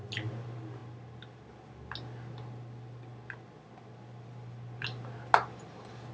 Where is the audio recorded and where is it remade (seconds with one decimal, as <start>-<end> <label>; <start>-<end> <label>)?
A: 0.0-6.1 recorded